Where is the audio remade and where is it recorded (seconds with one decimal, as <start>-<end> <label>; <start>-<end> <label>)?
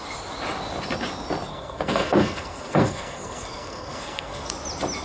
0.0-1.5 recorded; 1.5-4.5 remade; 4.5-5.0 recorded